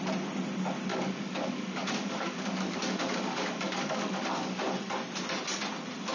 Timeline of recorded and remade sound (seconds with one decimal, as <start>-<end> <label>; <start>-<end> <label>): 0.0-0.9 recorded; 0.9-4.6 remade; 4.6-6.1 recorded